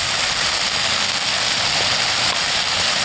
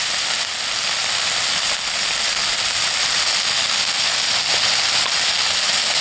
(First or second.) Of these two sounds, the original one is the second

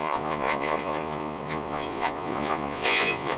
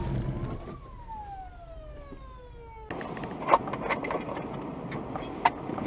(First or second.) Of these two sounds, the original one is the second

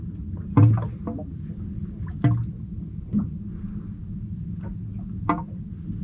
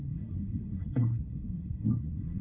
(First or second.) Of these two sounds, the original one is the first